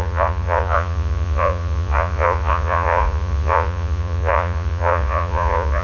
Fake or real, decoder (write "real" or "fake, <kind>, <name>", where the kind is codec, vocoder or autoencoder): fake, vocoder, Vocos